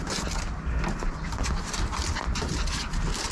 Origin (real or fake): real